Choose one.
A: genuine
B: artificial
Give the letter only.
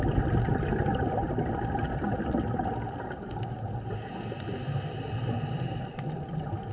A